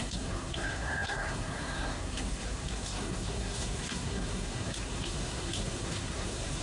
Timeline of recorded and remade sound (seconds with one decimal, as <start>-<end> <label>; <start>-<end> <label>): 0.0-6.6 remade

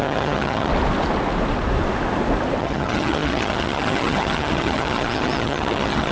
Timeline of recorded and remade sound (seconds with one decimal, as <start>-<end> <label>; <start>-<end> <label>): 0.0-0.7 remade; 0.7-2.6 recorded; 2.6-6.1 remade

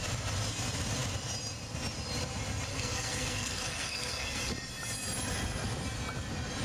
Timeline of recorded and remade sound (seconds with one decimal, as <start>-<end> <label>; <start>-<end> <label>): 0.0-2.7 recorded; 2.7-4.5 remade; 4.5-6.6 recorded

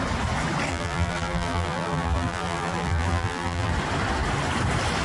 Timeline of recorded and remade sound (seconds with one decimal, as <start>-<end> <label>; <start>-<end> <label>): 0.0-0.7 recorded; 0.7-3.7 remade; 3.7-5.0 recorded

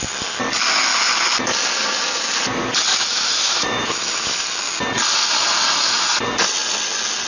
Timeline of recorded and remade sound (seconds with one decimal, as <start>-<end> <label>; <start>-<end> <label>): 0.0-2.9 recorded; 2.9-4.4 remade; 4.4-7.3 recorded

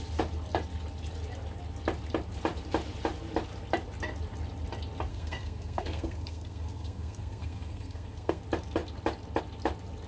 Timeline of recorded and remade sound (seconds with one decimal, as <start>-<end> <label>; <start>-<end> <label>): 0.0-5.1 recorded; 5.1-8.4 remade; 8.4-10.1 recorded